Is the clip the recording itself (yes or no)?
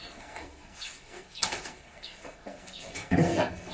no